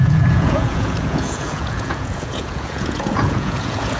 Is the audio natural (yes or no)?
no